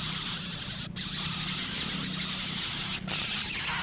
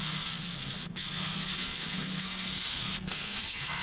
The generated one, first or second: second